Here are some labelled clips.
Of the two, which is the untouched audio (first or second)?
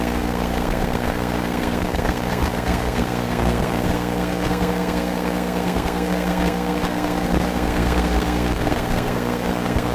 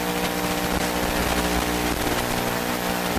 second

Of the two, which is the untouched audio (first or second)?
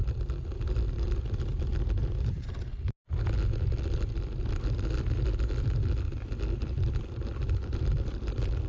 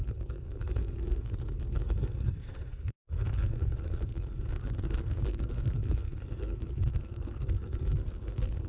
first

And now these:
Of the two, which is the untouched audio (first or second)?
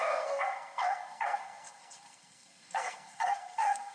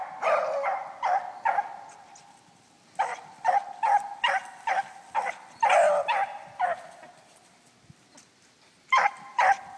second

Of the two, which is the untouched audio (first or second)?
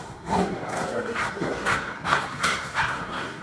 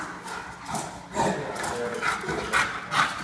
second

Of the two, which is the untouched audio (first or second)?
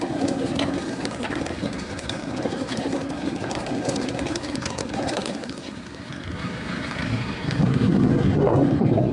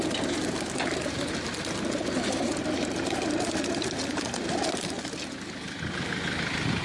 second